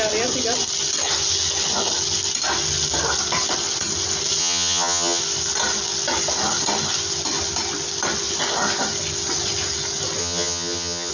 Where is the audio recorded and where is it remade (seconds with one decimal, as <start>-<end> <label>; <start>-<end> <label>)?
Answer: 0.0-4.4 recorded; 4.4-5.2 remade; 5.2-10.2 recorded; 10.2-11.1 remade